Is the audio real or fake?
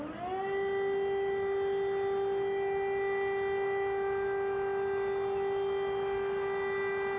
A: real